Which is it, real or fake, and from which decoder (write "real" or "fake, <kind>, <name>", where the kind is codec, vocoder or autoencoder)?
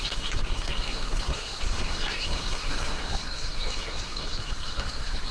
fake, codec, SNAC